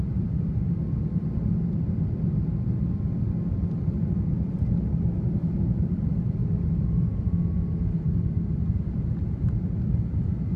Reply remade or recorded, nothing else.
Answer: recorded